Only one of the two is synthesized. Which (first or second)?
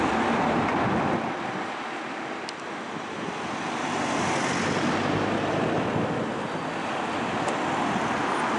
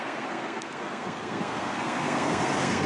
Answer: second